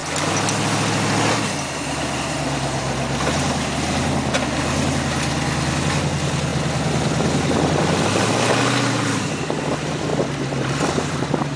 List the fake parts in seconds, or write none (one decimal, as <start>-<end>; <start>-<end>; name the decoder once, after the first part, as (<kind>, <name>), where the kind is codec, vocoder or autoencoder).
10.1-11.2 (vocoder, BigVGAN v2)